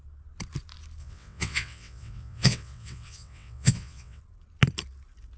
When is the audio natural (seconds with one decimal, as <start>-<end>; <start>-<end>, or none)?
0.0-1.0; 4.2-5.4

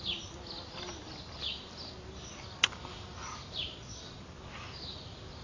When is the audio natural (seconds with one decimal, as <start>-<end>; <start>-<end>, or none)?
0.0-3.7; 4.2-5.4

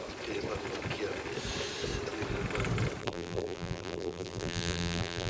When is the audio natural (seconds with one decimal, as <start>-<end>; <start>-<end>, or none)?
0.0-3.0

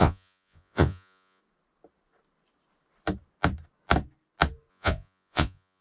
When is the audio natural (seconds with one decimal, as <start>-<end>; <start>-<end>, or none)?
1.4-4.7

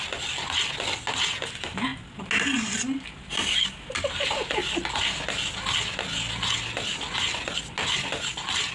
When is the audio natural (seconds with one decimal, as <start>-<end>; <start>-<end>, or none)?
0.0-8.7

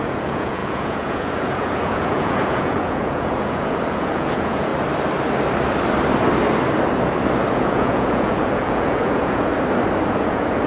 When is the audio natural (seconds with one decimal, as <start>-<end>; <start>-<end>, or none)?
4.7-7.5; 9.5-10.1

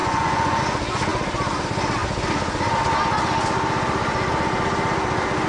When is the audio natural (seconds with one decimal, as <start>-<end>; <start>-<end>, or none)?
0.6-5.5